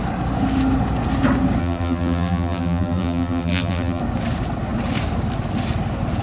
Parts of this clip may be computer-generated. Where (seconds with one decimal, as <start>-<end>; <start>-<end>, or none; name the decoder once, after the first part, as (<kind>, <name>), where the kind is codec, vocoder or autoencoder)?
1.6-4.0 (vocoder, BigVGAN v2)